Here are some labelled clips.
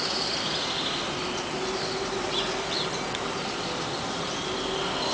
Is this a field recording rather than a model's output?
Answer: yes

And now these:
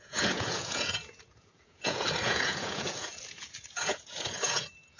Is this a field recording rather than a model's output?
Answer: no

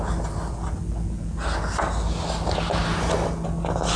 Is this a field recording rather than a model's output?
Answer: yes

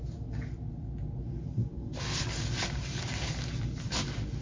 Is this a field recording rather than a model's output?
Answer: yes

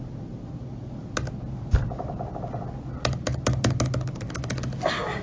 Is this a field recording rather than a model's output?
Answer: yes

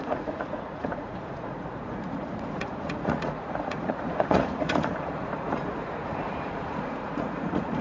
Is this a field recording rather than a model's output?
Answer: no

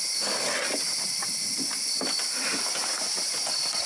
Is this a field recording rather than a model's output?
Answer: yes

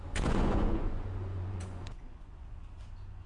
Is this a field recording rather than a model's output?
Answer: no